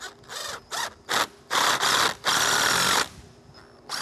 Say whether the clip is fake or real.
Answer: real